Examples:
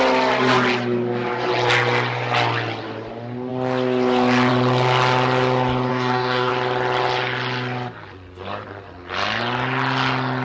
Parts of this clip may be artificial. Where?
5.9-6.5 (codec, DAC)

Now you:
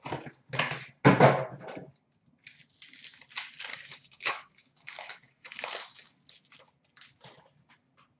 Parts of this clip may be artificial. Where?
3.7-6.1 (codec, DAC)

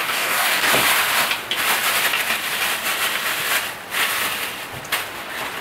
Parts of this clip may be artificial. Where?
0.0-0.7 (codec, DAC)

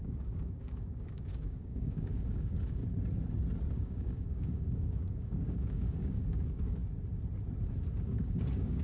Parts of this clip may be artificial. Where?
0.0-2.8 (codec, DAC); 3.7-6.8; 8.0-8.8

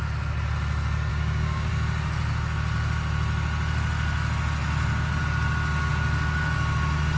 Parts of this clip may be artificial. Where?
1.1-1.7 (codec, DAC)

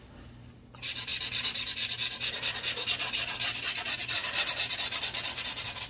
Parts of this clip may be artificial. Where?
none

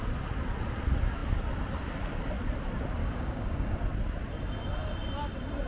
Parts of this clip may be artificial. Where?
3.0-3.7 (codec, DAC)